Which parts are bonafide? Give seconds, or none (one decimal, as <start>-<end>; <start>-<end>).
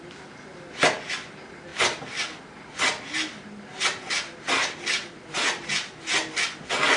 0.0-7.0